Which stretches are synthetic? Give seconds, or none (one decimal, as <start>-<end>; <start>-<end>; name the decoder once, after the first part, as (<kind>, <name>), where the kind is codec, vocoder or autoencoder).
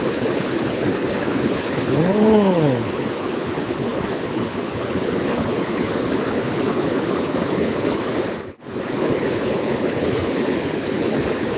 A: 0.0-11.6 (codec, HILCodec)